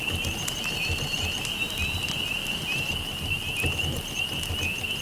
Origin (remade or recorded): recorded